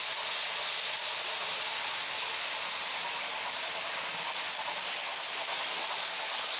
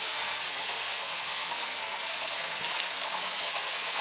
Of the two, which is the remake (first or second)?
second